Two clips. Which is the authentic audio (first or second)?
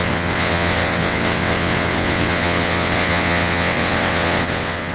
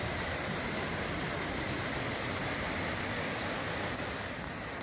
second